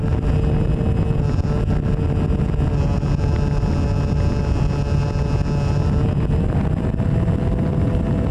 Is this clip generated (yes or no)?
no